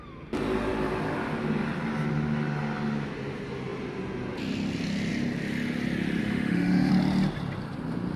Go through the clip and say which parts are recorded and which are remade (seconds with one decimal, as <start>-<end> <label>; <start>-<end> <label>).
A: 0.0-6.2 recorded; 6.2-6.9 remade; 6.9-8.2 recorded

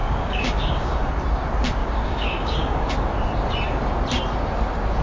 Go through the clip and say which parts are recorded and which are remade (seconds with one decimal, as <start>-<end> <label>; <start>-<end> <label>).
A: 0.0-1.1 remade; 1.1-1.8 recorded; 1.8-2.9 remade; 2.9-5.0 recorded

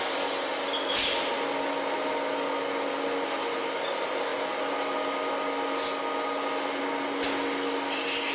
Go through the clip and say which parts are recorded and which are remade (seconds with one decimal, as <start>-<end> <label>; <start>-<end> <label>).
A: 0.0-8.3 recorded

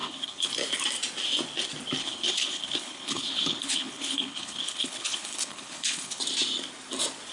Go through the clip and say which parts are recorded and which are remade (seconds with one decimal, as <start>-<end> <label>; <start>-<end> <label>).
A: 0.0-0.5 remade; 0.5-2.0 recorded; 2.0-6.2 remade; 6.2-7.3 recorded

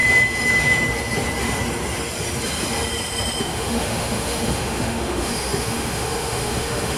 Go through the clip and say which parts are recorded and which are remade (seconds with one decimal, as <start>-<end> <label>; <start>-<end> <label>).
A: 0.0-3.4 recorded; 3.4-7.0 remade

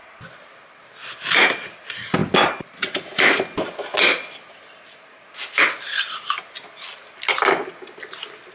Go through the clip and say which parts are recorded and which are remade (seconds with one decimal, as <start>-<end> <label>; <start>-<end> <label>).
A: 0.0-8.5 recorded

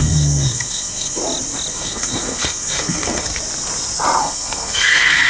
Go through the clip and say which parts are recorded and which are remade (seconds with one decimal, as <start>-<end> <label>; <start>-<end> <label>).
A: 0.0-1.2 remade; 1.2-1.7 recorded; 1.7-3.3 remade; 3.3-4.2 recorded; 4.2-5.3 remade